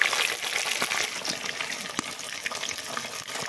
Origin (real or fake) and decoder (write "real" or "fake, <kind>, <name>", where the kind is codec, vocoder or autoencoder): real